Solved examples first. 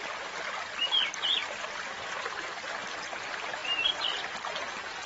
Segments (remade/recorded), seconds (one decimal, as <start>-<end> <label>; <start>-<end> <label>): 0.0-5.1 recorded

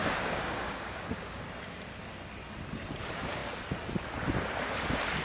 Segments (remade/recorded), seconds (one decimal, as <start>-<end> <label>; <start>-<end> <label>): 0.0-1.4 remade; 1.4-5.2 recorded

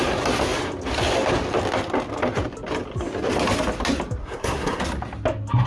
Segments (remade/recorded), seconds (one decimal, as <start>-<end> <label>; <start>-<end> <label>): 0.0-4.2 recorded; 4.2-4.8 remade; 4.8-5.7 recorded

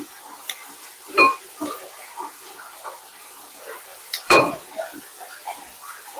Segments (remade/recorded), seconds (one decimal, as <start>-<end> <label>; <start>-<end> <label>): 0.0-0.6 recorded; 0.6-2.0 remade; 2.0-3.9 recorded; 3.9-4.7 remade; 4.7-6.2 recorded